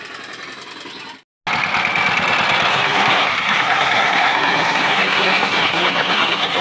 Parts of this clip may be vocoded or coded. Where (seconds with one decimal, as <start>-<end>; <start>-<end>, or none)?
2.7-6.6